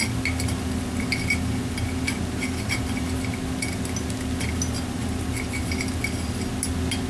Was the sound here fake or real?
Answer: real